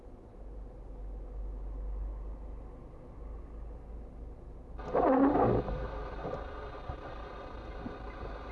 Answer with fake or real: real